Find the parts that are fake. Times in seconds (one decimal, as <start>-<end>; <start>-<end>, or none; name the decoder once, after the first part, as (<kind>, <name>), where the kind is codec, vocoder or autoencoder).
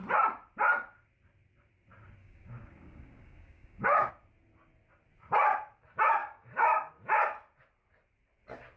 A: 2.2-4.1 (codec, DAC); 6.2-6.9